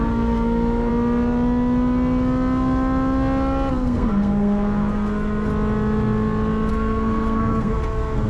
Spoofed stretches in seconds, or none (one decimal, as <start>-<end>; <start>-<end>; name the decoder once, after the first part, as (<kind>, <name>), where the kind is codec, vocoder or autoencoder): 0.0-0.9 (codec, SNAC); 3.7-5.5; 6.7-8.3